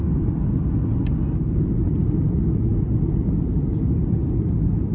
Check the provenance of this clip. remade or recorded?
recorded